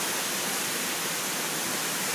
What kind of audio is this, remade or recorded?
recorded